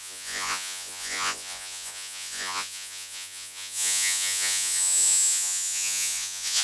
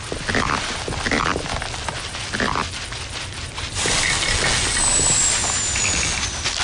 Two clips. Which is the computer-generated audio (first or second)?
first